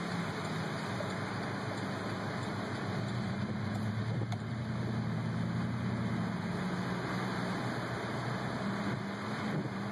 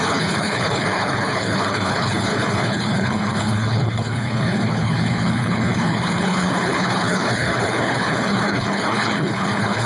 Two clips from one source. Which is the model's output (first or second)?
second